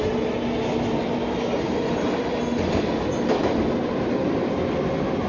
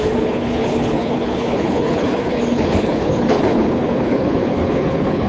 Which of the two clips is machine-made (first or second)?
second